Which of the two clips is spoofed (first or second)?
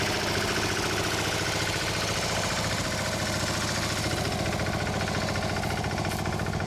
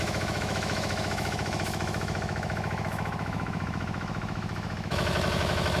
second